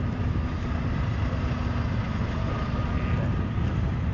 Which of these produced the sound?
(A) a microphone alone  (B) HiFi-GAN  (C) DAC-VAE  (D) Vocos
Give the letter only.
A